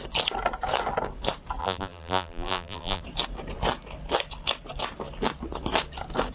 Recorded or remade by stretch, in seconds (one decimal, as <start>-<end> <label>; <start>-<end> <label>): 0.0-1.6 recorded; 1.6-3.0 remade; 3.0-6.3 recorded